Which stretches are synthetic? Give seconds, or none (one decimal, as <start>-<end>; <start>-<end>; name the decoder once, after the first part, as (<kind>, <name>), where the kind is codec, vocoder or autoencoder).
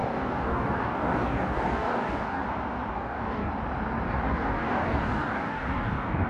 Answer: 0.0-2.4 (codec, DAC); 2.9-3.5; 4.1-6.3